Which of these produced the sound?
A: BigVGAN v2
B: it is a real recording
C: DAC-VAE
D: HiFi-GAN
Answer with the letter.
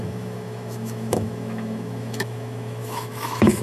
C